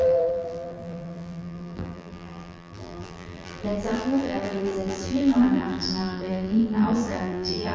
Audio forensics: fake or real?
fake